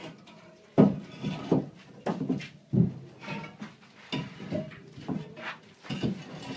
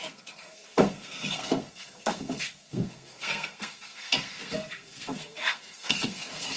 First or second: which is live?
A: first